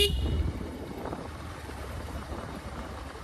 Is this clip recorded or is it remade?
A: remade